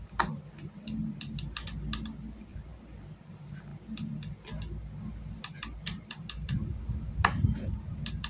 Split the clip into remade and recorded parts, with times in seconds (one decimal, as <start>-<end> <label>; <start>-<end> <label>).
0.0-2.5 recorded; 2.5-3.2 remade; 3.2-8.3 recorded